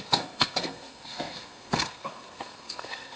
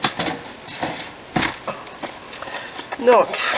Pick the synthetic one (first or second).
first